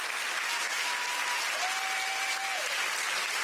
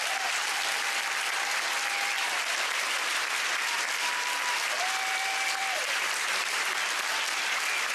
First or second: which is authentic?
first